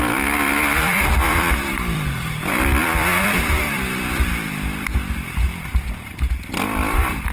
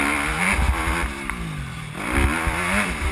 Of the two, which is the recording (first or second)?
second